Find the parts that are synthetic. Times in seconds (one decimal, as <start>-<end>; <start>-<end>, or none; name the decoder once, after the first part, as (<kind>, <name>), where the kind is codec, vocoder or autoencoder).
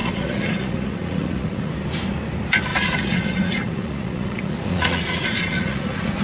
0.0-1.7 (vocoder, Vocos); 2.7-6.2